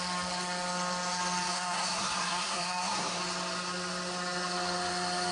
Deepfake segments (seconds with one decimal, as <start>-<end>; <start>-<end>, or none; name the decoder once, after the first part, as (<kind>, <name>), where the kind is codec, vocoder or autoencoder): 1.5-3.2 (codec, SNAC)